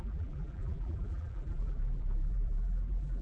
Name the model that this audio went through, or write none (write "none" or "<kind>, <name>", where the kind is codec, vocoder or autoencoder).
vocoder, BigVGAN v2